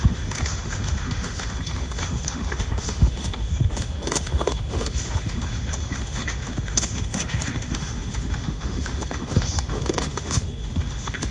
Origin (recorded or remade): remade